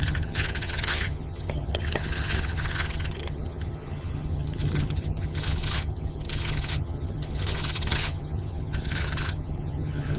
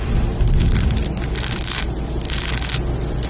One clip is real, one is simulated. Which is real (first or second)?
second